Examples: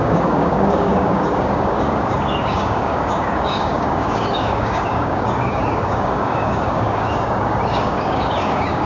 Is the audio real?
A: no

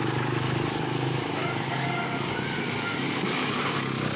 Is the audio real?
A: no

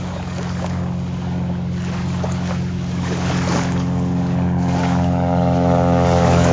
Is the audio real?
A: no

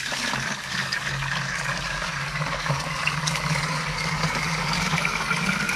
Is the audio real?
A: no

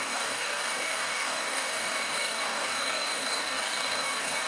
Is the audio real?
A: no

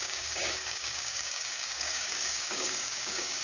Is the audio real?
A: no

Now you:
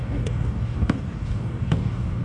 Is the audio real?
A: no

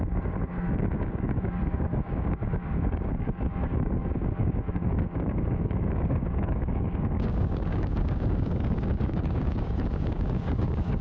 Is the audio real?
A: no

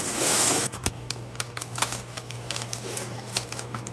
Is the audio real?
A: no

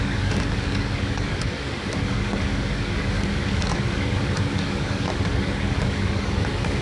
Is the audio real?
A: no